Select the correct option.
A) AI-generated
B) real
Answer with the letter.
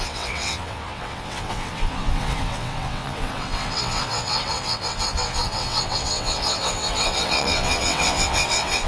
A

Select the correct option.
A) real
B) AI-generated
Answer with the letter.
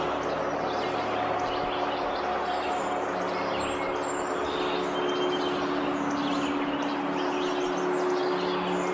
A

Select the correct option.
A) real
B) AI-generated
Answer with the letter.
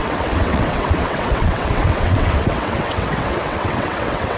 B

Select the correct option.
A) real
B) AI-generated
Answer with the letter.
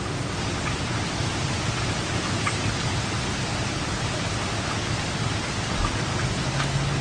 A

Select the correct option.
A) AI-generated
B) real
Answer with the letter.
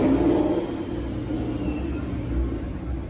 B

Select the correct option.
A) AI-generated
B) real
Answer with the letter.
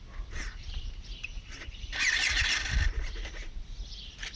B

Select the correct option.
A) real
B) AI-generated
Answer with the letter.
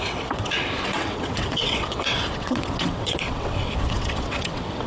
B